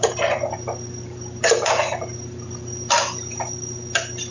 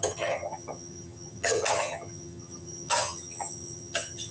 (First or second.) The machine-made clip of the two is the second